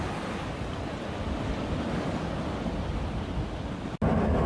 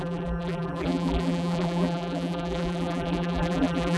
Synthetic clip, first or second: second